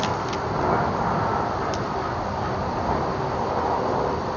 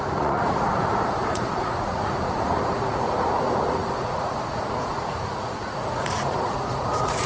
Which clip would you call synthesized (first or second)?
second